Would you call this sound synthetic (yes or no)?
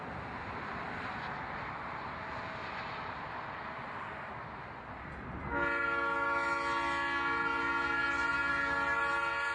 no